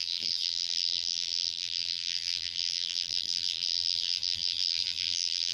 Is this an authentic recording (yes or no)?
no